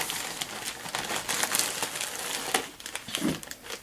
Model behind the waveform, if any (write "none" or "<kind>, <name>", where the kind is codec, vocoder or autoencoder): none